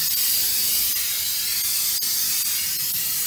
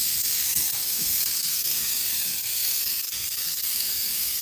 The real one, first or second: first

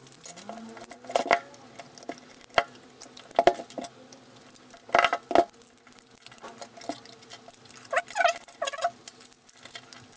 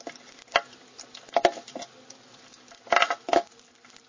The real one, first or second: first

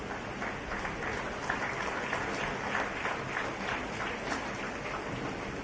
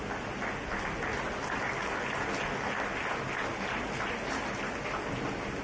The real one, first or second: second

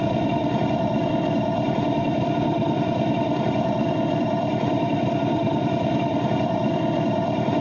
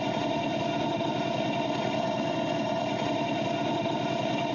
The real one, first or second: second